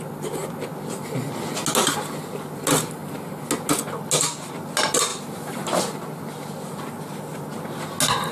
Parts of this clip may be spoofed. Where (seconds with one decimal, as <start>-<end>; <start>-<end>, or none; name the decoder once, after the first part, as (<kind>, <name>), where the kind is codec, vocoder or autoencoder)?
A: 5.1-5.8 (vocoder, BigVGAN v2)